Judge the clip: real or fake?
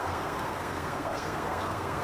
fake